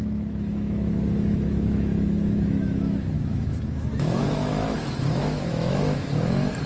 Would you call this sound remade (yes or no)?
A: yes